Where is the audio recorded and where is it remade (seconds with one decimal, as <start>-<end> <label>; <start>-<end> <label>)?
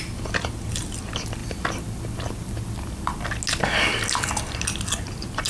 0.0-1.4 recorded; 1.4-3.4 remade; 3.4-5.5 recorded